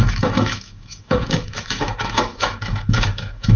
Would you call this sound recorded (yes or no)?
no